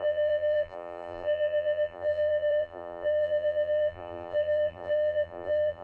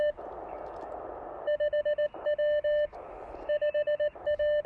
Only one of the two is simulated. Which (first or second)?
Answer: first